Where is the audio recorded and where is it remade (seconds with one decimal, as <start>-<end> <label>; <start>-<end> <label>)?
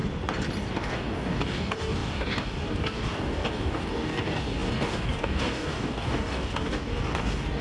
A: 0.0-0.7 recorded; 0.7-7.6 remade